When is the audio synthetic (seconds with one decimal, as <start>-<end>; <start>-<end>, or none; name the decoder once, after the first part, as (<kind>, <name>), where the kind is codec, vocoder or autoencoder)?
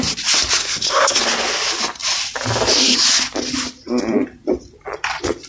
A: 0.6-1.2 (codec, SNAC)